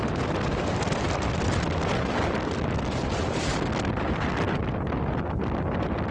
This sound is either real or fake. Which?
real